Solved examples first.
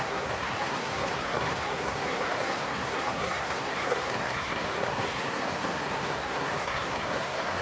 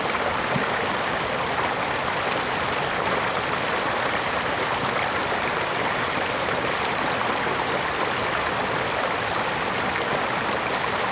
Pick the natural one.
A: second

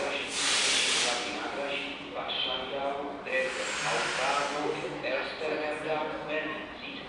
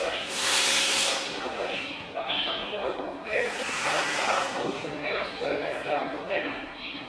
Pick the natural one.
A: first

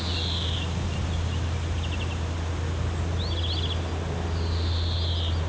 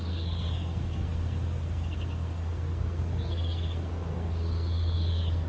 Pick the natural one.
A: first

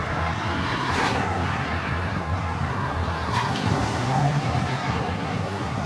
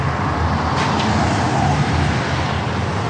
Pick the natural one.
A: second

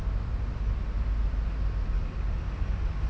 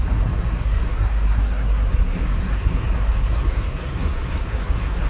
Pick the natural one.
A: first